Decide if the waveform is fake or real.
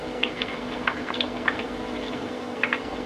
fake